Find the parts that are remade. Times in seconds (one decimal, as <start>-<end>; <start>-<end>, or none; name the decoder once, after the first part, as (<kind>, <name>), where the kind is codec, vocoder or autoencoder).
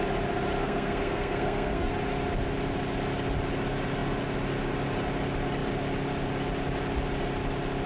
0.6-1.9 (codec, SNAC)